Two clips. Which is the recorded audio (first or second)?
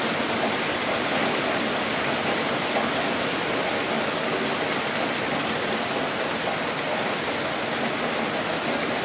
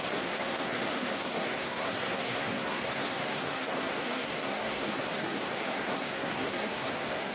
first